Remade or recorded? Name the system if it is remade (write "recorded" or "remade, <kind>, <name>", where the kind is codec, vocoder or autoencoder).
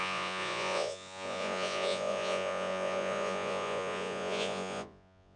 remade, vocoder, Vocos